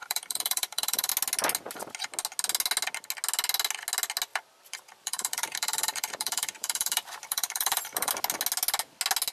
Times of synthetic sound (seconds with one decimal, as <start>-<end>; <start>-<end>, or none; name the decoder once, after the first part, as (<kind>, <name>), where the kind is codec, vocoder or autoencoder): 0.0-1.1 (vocoder, BigVGAN v2); 4.3-8.1